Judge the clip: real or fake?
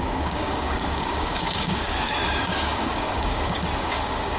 fake